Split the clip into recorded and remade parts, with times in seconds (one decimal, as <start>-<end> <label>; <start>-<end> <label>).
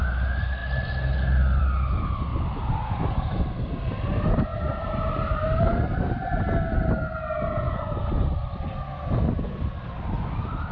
0.0-2.3 recorded; 2.3-3.4 remade; 3.4-4.5 recorded; 4.5-6.4 remade; 6.4-10.7 recorded